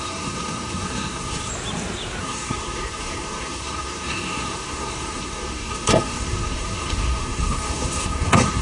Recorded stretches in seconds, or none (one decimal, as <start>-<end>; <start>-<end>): 1.5-2.2